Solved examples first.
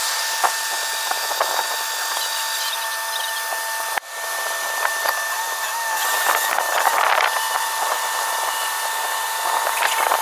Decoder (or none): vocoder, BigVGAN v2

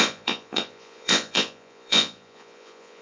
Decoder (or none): vocoder, Vocos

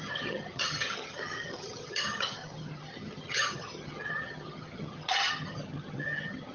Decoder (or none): vocoder, HiFi-GAN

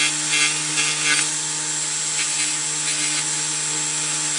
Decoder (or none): none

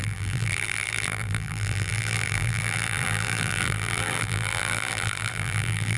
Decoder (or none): vocoder, BigVGAN v2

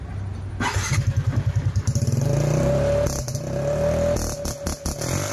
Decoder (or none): none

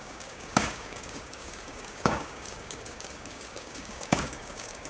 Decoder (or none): codec, DAC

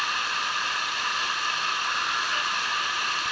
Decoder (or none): none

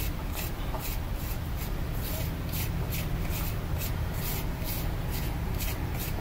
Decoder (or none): none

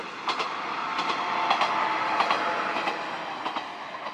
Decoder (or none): none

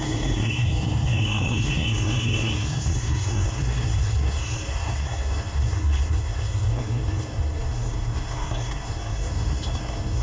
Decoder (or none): codec, SNAC